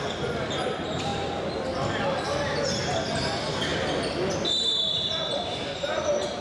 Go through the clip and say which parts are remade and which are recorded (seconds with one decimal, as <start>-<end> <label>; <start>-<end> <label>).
0.0-6.4 recorded